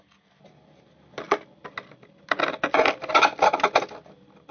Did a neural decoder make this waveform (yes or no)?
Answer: no